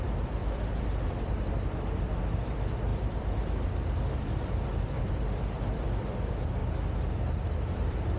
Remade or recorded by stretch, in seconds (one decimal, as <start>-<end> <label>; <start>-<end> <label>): 0.0-6.6 remade; 6.6-7.7 recorded; 7.7-8.2 remade